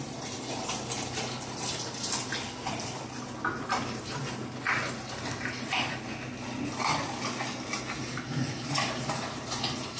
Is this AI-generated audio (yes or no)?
no